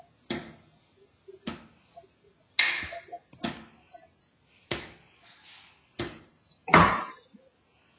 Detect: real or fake real